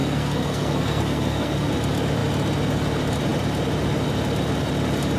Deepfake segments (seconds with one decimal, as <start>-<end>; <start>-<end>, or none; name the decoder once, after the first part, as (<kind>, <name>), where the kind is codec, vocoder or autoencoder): 0.0-1.7 (codec, SNAC)